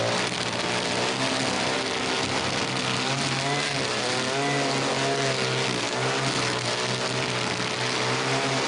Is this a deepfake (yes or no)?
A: no